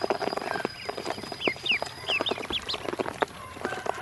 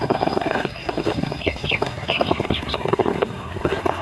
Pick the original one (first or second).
first